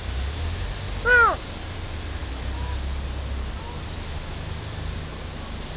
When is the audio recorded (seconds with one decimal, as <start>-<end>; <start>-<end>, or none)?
0.0-5.8